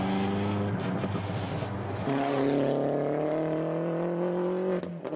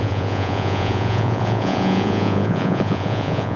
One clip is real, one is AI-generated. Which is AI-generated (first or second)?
second